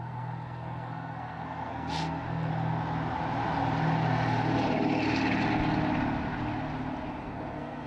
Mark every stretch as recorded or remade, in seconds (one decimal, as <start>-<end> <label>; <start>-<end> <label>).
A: 0.0-2.5 remade; 2.5-7.2 recorded; 7.2-7.9 remade